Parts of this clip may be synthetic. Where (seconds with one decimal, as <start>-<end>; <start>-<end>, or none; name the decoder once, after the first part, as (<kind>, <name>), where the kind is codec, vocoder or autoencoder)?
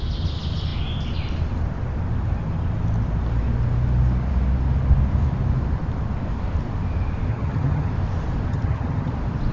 7.3-7.9 (vocoder, HiFi-GAN); 8.5-9.1